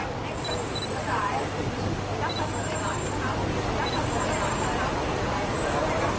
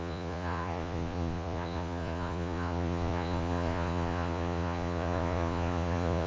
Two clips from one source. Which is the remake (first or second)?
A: second